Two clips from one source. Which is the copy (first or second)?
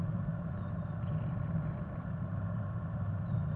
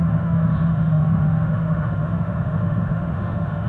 second